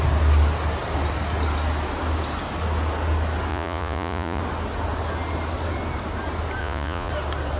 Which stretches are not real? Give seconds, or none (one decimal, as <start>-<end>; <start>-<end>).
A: 3.5-4.4; 6.6-7.1